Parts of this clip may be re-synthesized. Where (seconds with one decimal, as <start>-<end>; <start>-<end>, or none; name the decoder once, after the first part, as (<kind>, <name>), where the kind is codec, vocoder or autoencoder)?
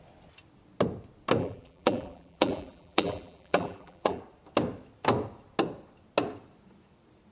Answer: 1.4-4.2 (vocoder, BigVGAN v2)